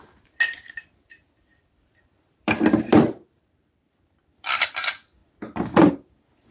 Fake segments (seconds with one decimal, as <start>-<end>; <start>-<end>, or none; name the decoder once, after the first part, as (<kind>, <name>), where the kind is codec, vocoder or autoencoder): 1.5-4.8 (vocoder, BigVGAN v2); 5.2-5.9

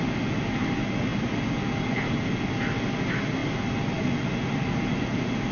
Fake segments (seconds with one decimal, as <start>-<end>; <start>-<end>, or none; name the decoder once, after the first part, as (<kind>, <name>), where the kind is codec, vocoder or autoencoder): none

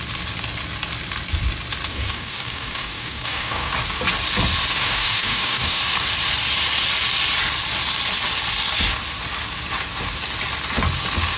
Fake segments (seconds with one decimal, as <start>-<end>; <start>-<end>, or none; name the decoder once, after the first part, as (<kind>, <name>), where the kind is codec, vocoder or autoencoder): 1.9-3.7 (codec, DAC); 4.7-5.8